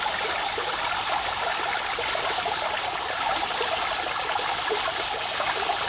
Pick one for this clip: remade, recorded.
recorded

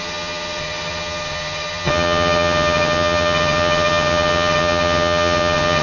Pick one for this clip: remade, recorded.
remade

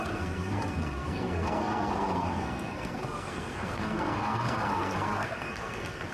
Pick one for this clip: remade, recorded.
remade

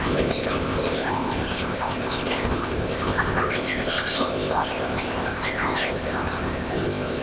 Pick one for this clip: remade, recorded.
remade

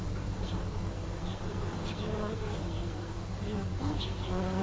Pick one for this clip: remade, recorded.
remade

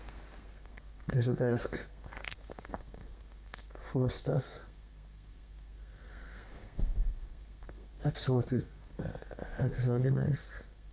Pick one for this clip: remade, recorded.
remade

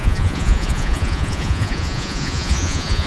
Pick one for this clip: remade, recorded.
remade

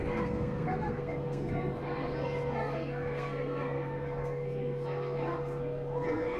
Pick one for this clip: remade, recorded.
remade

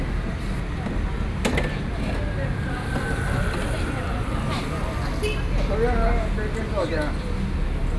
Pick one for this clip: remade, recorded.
recorded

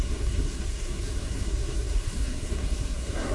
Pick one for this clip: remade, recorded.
remade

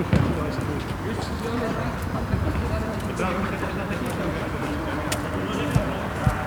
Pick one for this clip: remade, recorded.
recorded